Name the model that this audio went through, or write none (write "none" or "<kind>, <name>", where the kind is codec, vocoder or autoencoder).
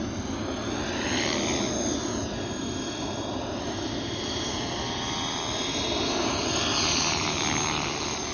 none